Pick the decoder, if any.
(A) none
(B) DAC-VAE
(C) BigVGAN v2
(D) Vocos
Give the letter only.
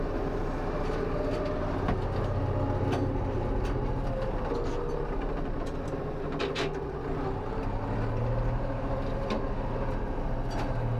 A